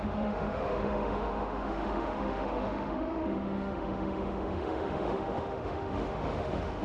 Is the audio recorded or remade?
remade